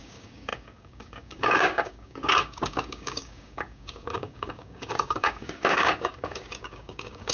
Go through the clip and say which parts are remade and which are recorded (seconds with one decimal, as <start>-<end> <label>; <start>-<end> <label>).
0.0-7.3 remade